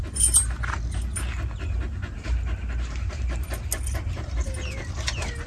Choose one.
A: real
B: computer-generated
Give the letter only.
A